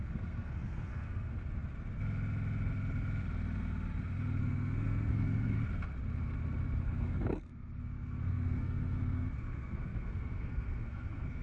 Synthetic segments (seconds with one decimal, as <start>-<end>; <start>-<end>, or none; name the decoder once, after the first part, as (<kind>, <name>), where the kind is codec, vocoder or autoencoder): 0.0-1.4 (codec, SNAC); 4.4-5.6; 6.8-11.4